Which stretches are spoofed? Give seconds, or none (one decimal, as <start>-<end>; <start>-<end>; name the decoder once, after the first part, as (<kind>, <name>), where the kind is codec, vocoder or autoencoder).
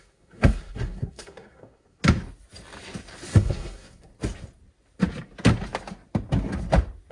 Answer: 0.0-2.0 (codec, SNAC); 3.3-4.1